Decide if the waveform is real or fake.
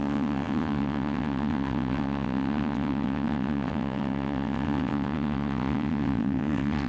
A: fake